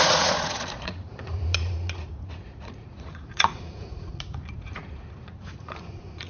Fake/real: fake